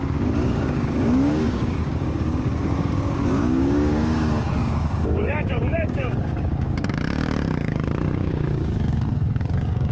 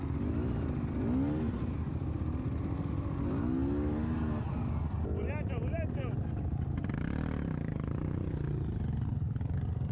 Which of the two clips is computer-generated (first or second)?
first